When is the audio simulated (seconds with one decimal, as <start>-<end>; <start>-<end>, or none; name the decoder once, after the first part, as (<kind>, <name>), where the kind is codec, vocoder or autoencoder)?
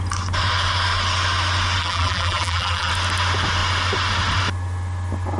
1.8-2.9 (vocoder, BigVGAN v2)